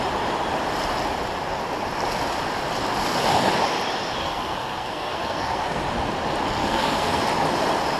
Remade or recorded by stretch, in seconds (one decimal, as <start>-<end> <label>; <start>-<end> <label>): 0.0-4.2 recorded; 4.2-5.8 remade; 5.8-6.6 recorded; 6.6-7.2 remade; 7.2-8.0 recorded